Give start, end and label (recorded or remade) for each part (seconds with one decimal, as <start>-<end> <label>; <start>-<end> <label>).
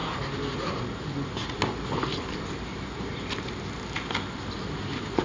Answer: 0.0-5.2 recorded